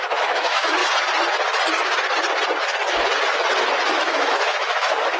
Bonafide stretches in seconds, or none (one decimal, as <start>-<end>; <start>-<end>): 0.8-3.9